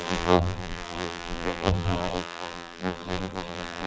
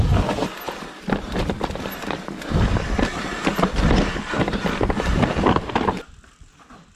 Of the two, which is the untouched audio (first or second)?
second